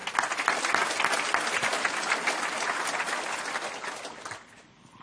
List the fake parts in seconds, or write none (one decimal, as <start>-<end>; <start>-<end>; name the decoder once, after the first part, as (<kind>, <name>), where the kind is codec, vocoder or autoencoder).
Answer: none